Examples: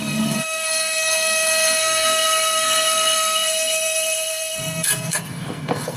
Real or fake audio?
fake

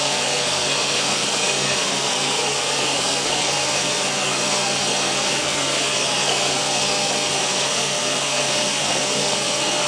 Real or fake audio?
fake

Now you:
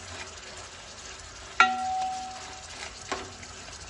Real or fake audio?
real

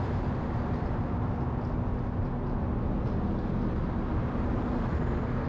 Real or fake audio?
real